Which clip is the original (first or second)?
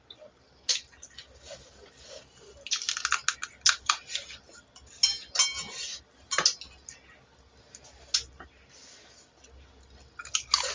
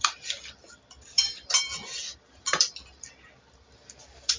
first